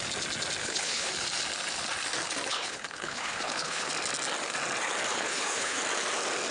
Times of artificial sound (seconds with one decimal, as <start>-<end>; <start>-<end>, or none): 0.6-1.1; 2.5-3.9; 5.1-5.8